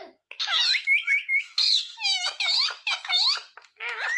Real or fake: fake